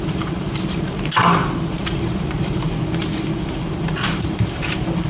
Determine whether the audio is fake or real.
fake